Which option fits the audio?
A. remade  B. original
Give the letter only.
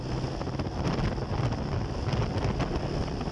B